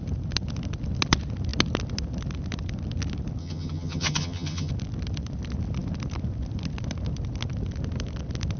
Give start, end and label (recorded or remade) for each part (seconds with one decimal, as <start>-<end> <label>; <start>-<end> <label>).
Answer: 0.0-3.4 recorded; 3.4-4.7 remade; 4.7-8.6 recorded